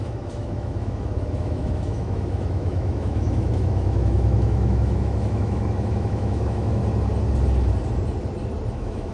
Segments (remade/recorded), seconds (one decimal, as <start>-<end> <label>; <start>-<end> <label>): 0.0-6.8 remade; 6.8-8.7 recorded; 8.7-9.1 remade